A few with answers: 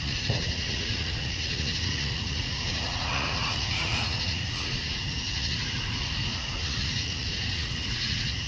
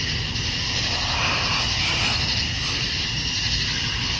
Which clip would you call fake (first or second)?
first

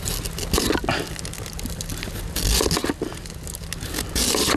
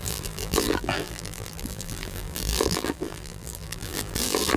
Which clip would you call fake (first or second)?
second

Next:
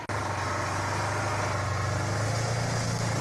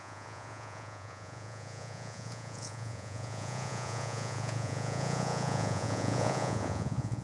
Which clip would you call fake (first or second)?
second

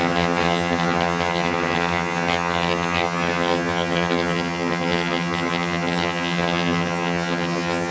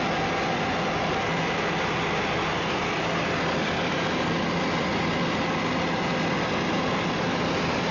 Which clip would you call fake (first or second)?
first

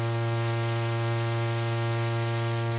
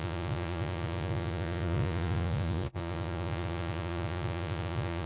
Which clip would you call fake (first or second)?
second